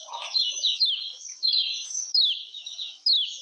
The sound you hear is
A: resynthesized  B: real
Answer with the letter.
A